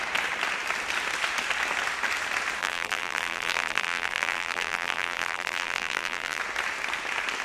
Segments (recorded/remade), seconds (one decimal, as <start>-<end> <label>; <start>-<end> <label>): 0.0-2.6 recorded; 2.6-6.4 remade; 6.4-7.4 recorded